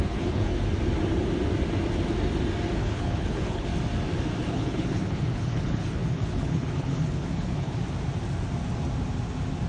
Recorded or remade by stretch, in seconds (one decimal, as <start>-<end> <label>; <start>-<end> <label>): 0.0-0.5 remade; 0.5-2.8 recorded; 2.8-3.7 remade; 3.7-4.5 recorded; 4.5-7.8 remade; 7.8-9.7 recorded